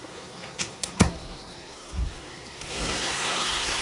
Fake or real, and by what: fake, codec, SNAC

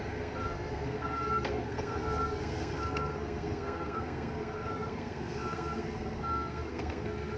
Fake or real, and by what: fake, codec, SNAC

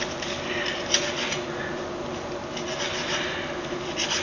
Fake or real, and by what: real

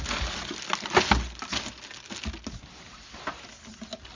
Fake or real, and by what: real